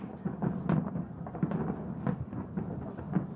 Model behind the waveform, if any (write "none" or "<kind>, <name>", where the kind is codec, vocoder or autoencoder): none